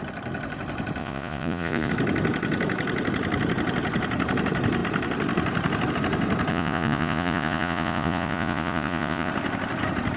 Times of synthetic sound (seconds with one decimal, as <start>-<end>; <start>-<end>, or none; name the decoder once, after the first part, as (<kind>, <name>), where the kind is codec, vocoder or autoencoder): 1.0-1.9 (vocoder, Vocos); 6.5-9.3

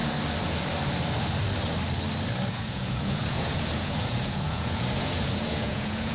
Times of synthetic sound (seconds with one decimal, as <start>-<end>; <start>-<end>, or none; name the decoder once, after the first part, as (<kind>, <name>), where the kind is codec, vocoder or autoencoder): 2.5-6.1 (vocoder, Vocos)

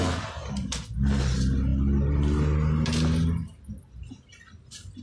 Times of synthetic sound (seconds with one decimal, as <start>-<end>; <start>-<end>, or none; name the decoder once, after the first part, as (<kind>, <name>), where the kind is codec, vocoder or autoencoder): none

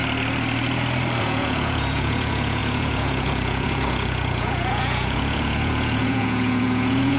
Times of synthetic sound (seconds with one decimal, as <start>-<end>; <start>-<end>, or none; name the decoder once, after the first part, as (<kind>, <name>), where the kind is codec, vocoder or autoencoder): 1.2-7.2 (vocoder, Vocos)

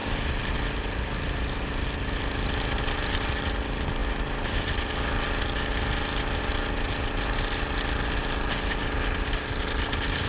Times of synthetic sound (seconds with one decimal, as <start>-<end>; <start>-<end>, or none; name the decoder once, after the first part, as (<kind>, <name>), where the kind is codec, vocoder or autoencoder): none

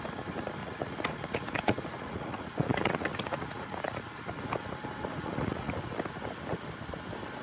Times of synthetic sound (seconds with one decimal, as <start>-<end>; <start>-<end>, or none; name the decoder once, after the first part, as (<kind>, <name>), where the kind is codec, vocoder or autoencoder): 0.6-4.3 (vocoder, Vocos); 5.1-5.7

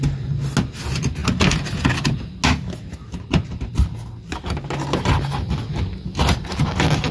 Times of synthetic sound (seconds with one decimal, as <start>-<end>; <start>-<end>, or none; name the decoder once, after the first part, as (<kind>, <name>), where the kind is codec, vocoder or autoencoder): none